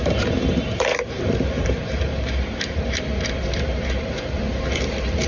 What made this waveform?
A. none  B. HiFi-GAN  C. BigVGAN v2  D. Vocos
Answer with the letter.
C